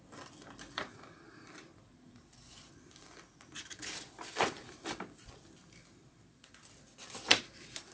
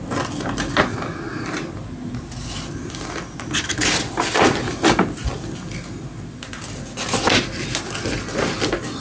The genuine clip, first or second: second